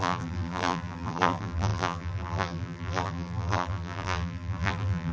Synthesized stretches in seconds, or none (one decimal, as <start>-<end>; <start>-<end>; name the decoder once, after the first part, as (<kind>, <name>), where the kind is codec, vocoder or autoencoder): 0.0-5.1 (vocoder, BigVGAN v2)